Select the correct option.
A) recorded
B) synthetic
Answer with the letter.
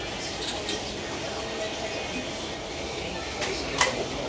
A